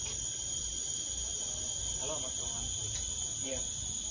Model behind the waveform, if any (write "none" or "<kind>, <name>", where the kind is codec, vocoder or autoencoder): none